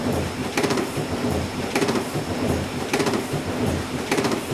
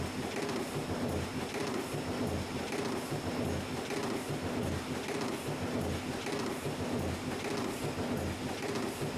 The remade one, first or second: first